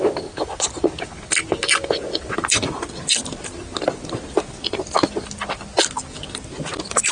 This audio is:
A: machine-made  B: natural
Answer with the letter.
B